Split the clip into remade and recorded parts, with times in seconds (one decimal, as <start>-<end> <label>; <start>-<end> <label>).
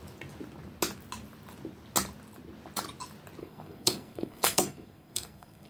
0.0-3.4 recorded; 3.4-5.7 remade